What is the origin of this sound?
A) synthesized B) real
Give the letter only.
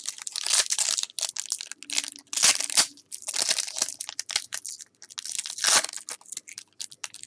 B